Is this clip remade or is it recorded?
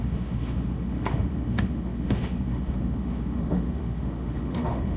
remade